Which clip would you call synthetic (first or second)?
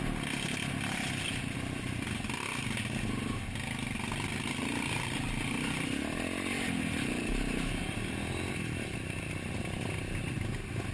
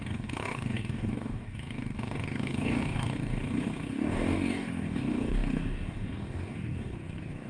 second